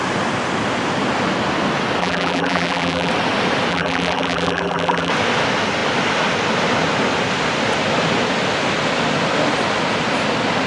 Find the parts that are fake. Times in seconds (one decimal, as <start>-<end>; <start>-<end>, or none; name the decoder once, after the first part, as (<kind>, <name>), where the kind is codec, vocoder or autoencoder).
2.0-3.1 (vocoder, BigVGAN v2); 3.7-5.1